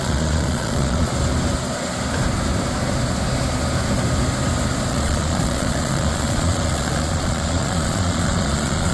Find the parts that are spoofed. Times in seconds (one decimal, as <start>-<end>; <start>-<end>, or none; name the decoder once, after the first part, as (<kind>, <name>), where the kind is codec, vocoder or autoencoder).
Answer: 0.0-1.1 (vocoder, Vocos); 4.9-8.9